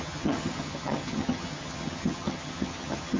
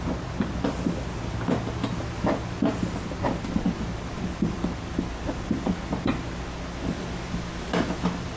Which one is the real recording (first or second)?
second